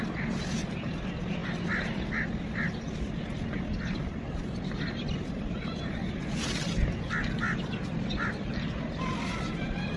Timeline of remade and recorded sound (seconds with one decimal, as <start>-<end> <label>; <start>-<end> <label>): 0.0-10.0 recorded

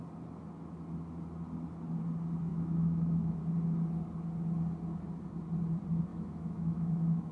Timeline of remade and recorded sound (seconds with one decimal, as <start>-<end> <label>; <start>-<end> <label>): 0.0-2.5 recorded; 2.5-3.4 remade; 3.4-6.1 recorded; 6.1-7.3 remade

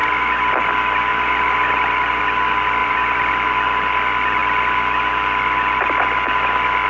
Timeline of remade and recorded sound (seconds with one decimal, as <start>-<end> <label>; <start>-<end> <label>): 0.0-0.5 remade; 0.5-1.1 recorded; 1.1-2.2 remade; 2.2-2.8 recorded; 2.8-3.3 remade; 3.3-6.9 recorded

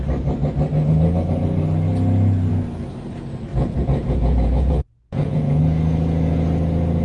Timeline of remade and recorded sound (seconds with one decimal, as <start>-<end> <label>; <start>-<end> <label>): 0.0-3.5 recorded; 3.5-5.6 remade; 5.6-7.0 recorded